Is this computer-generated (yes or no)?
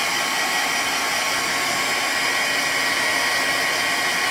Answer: no